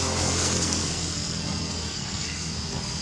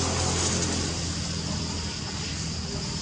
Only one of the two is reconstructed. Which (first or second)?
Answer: first